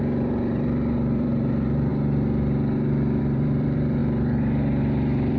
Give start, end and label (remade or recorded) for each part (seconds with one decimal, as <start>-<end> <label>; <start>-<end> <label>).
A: 0.0-1.9 remade; 1.9-3.2 recorded; 3.2-5.4 remade